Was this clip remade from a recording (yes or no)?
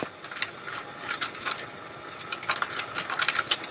no